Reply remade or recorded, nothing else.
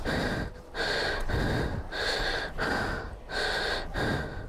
recorded